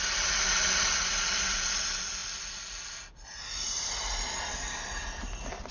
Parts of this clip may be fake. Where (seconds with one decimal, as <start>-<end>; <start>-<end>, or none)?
none